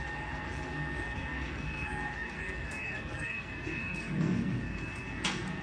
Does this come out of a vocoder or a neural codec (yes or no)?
yes